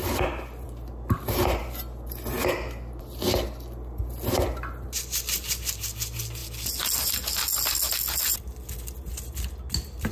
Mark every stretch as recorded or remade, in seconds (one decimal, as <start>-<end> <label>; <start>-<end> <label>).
0.0-10.1 recorded